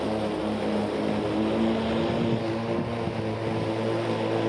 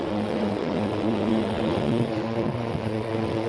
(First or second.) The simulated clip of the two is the second